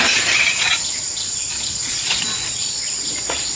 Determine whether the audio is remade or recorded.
remade